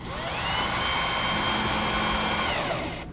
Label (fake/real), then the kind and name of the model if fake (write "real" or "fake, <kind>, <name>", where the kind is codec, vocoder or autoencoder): real